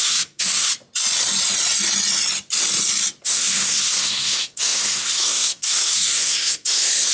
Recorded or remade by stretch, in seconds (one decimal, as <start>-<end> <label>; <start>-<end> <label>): 0.0-0.7 remade; 0.7-3.2 recorded; 3.2-7.1 remade

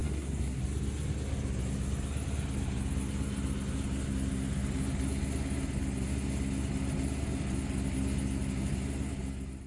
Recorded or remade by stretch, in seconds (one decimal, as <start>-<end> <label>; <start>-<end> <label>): 0.0-0.6 remade; 0.6-9.7 recorded

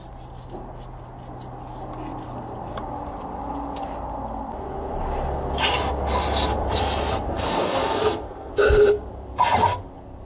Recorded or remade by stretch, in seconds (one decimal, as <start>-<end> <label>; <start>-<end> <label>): 0.0-7.3 recorded; 7.3-8.5 remade; 8.5-10.2 recorded

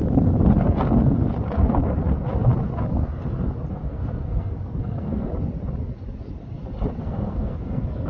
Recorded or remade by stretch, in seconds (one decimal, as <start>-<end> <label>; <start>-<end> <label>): 0.0-3.7 recorded; 3.7-5.3 remade; 5.3-7.0 recorded; 7.0-8.1 remade

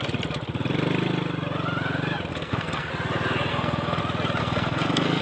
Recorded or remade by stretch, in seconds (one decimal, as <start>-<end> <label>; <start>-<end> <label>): 0.0-2.3 recorded; 2.3-2.9 remade; 2.9-3.5 recorded; 3.5-4.0 remade; 4.0-4.4 recorded; 4.4-5.2 remade